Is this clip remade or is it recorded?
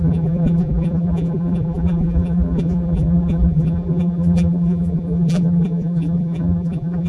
remade